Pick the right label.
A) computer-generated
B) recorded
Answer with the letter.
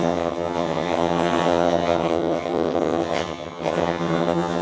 A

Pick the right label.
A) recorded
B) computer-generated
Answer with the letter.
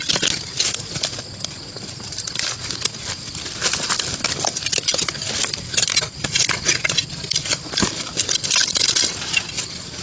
A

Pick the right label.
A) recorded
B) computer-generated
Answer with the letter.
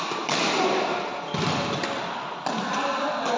A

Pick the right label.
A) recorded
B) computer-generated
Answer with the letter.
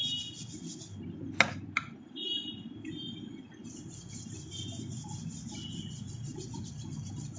A